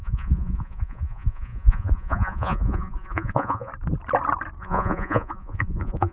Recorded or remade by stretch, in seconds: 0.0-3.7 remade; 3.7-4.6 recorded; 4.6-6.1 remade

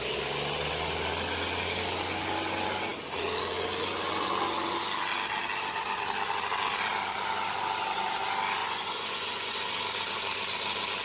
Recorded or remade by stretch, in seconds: 0.0-8.6 recorded; 8.6-9.6 remade; 9.6-11.0 recorded

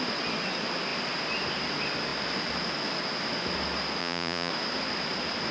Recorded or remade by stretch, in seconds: 0.0-4.0 recorded; 4.0-4.5 remade; 4.5-5.5 recorded

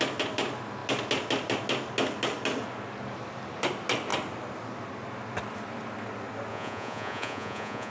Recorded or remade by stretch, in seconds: 0.0-6.5 recorded; 6.5-7.9 remade

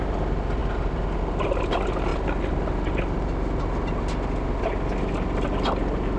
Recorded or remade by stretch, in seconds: 0.0-6.2 recorded

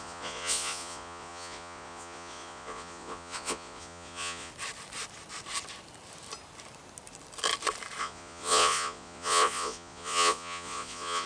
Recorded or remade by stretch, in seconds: 0.0-4.5 remade; 4.5-8.0 recorded; 8.0-11.3 remade

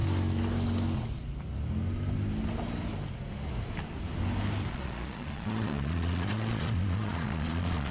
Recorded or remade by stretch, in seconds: 0.0-4.7 recorded; 4.7-7.9 remade